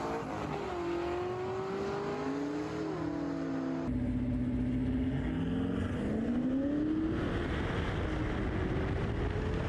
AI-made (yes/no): no